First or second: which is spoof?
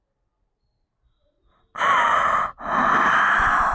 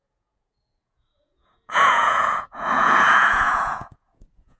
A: second